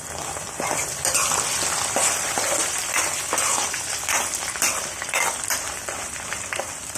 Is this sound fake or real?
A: fake